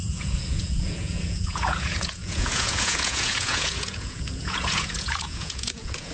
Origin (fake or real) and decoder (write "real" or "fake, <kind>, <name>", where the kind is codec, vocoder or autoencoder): fake, vocoder, Vocos